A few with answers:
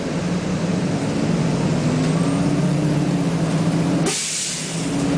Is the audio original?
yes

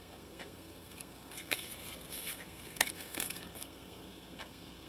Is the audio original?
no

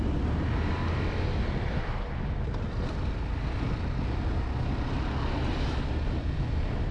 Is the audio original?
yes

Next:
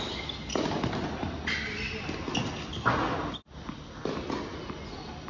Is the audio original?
yes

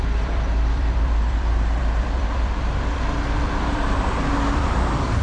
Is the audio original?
no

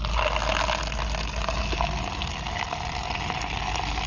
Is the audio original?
yes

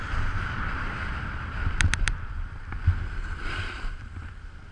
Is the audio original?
no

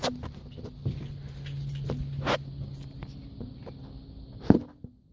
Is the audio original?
yes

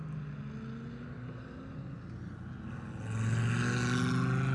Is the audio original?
yes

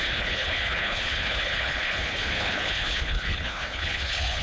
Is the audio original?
no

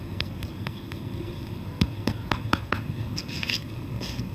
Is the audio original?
no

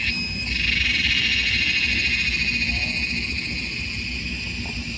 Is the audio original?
yes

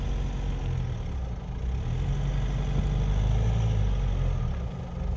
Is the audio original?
yes